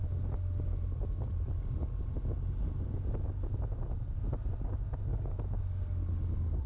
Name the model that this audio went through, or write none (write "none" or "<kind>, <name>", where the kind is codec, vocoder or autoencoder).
none